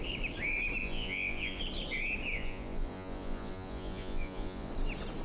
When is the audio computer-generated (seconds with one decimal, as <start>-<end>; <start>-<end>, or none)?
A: 0.8-1.6; 2.3-4.7